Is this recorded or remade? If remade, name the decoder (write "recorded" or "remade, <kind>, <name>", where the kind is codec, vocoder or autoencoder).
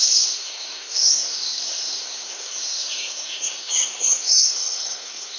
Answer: remade, codec, SNAC